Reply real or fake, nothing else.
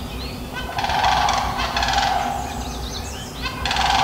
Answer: real